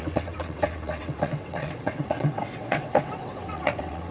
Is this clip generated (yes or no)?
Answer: yes